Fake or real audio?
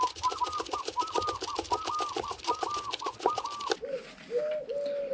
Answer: real